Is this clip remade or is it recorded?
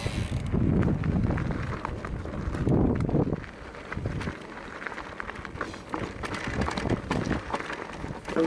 recorded